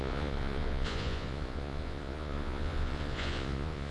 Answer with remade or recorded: remade